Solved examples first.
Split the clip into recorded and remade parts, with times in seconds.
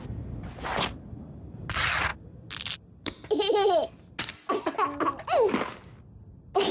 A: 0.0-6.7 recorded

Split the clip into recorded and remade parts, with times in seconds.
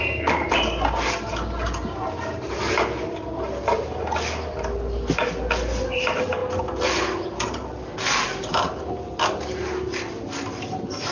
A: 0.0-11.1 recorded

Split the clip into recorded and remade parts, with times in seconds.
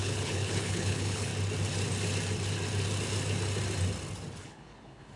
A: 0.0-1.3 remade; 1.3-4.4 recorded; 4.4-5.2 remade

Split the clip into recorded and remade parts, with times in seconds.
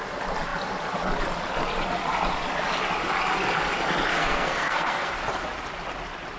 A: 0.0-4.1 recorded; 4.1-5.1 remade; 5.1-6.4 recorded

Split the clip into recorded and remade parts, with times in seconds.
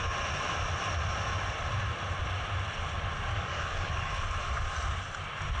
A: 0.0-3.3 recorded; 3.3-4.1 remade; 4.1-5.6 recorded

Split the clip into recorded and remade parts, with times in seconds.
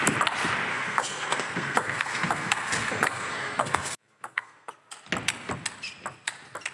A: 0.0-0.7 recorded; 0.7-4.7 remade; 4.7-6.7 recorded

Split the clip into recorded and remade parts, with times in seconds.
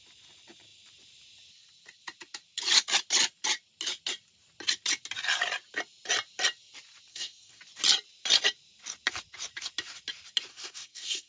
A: 0.0-7.1 recorded; 7.1-7.6 remade; 7.6-10.5 recorded; 10.5-11.3 remade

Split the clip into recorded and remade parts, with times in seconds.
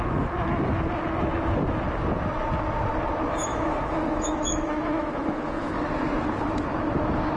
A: 0.0-3.5 recorded; 3.5-5.7 remade; 5.7-7.4 recorded